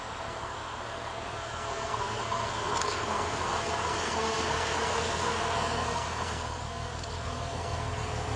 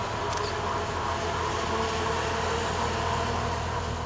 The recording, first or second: second